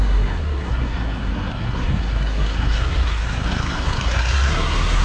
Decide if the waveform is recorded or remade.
remade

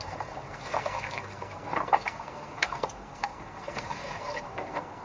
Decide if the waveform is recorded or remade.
remade